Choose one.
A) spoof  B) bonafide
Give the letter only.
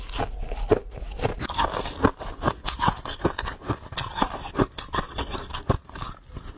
B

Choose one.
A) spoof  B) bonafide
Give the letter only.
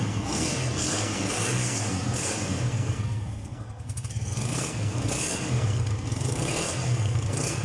A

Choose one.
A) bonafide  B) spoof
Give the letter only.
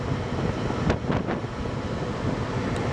A